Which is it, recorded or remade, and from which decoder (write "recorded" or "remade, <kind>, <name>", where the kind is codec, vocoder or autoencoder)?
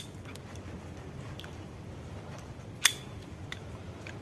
recorded